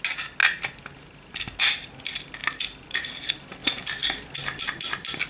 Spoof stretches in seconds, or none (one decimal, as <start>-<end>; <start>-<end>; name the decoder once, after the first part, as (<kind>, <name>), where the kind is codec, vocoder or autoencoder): 2.4-3.1 (vocoder, BigVGAN v2)

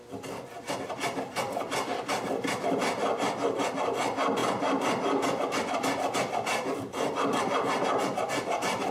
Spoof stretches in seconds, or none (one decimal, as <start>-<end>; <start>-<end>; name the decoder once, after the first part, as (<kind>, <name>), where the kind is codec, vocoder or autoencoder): 1.9-2.8 (vocoder, BigVGAN v2); 4.4-7.4

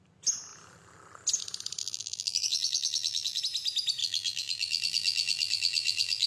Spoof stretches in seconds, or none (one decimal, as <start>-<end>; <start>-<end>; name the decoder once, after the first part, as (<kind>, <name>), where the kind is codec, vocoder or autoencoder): 1.8-3.4 (vocoder, BigVGAN v2); 4.0-6.3

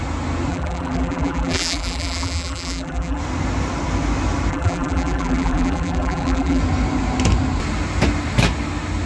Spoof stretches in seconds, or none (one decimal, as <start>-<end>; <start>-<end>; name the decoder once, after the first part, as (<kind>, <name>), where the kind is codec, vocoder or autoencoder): 0.5-3.2 (vocoder, BigVGAN v2); 4.5-6.6